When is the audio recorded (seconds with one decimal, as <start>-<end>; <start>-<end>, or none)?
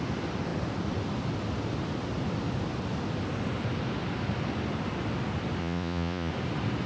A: 0.0-5.6; 6.3-6.9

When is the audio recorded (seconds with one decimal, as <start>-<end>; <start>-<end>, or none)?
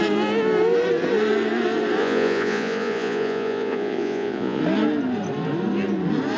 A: 0.0-2.0; 4.6-6.4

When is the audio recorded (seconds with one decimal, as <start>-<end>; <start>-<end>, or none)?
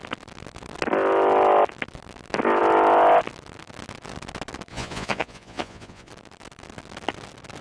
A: 0.0-4.7; 6.1-7.6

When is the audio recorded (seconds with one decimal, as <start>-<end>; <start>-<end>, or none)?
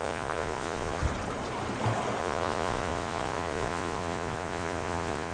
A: 1.0-2.2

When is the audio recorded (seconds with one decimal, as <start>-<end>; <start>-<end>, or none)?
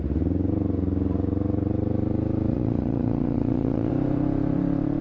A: 0.0-2.5; 3.9-5.0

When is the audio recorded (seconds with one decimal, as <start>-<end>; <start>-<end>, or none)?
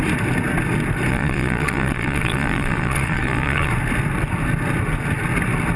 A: 0.0-1.1; 3.7-5.8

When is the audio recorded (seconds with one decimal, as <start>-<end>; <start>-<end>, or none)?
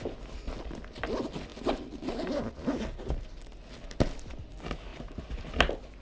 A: 0.0-6.0